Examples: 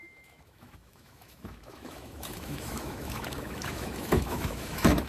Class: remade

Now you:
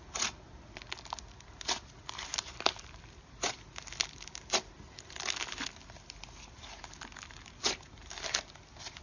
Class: recorded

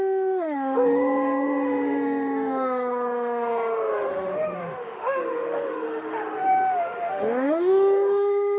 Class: remade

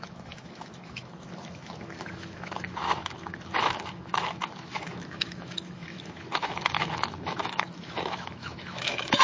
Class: remade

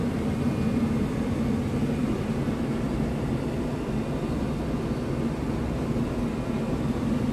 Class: recorded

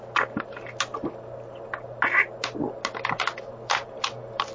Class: recorded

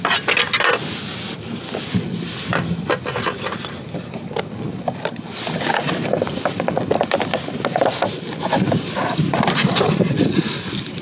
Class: recorded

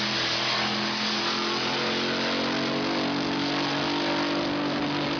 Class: recorded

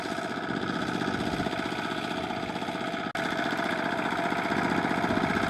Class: recorded